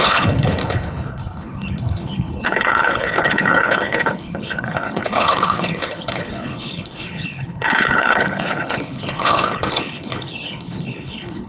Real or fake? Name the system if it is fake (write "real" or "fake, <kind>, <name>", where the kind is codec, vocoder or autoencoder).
fake, codec, HILCodec